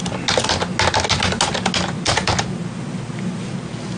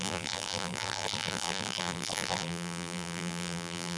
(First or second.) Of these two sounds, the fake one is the second